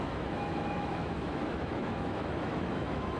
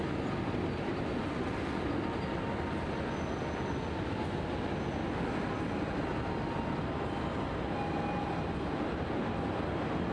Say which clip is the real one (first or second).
second